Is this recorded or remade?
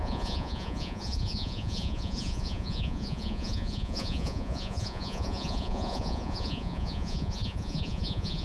remade